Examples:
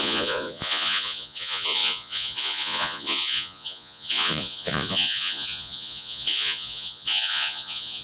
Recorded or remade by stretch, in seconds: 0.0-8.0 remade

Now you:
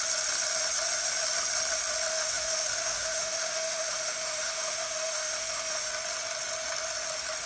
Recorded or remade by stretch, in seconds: 0.0-2.1 recorded; 2.1-5.9 remade; 5.9-7.5 recorded